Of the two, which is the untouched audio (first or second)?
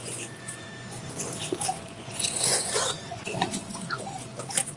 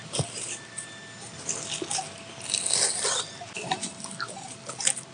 second